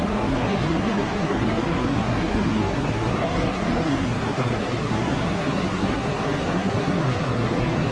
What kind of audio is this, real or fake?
fake